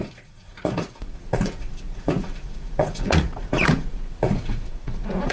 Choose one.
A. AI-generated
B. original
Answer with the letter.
A